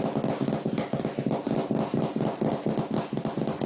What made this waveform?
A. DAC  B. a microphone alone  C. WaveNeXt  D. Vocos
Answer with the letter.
B